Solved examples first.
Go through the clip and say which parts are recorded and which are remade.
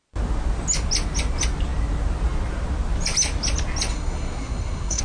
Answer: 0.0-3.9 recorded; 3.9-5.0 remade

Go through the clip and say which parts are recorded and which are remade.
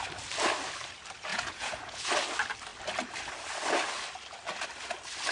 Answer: 0.0-1.3 recorded; 1.3-2.1 remade; 2.1-5.3 recorded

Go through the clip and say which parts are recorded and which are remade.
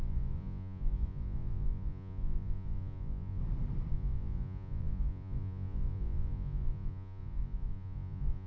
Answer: 0.0-3.4 remade; 3.4-3.9 recorded; 3.9-8.5 remade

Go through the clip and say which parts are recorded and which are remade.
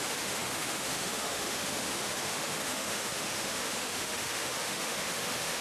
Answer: 0.0-5.6 remade